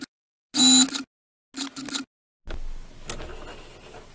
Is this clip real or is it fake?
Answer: real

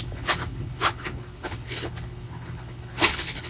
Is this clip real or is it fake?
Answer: fake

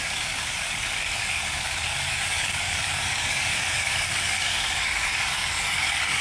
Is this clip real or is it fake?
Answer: fake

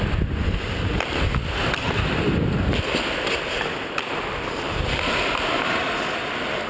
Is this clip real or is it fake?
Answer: real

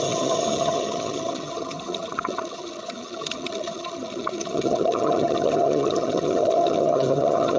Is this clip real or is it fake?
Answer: fake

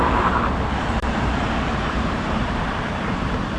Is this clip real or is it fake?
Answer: fake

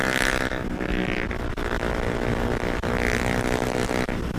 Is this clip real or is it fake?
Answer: real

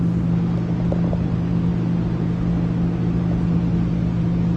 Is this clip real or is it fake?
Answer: real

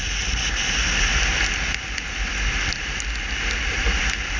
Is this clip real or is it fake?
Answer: real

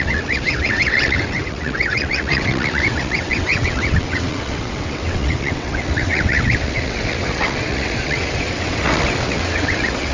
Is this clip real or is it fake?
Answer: fake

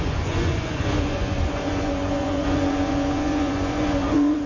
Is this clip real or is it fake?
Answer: fake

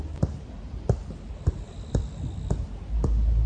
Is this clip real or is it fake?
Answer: fake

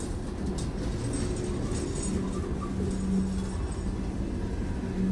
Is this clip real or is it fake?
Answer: real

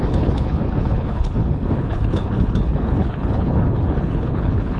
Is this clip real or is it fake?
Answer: fake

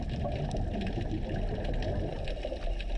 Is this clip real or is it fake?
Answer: real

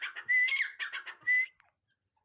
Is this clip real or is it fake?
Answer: real